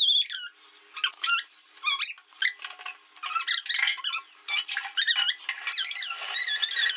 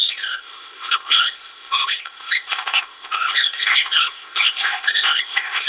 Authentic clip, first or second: first